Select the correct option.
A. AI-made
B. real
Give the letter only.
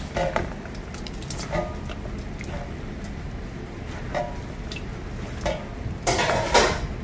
B